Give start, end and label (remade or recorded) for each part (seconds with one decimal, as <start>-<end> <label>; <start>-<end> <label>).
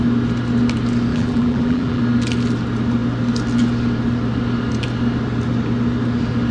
0.0-1.1 recorded; 1.1-2.0 remade; 2.0-6.5 recorded